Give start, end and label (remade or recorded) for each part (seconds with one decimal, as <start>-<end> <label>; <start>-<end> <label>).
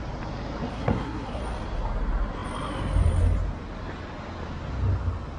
0.0-0.7 recorded; 0.7-1.4 remade; 1.4-5.4 recorded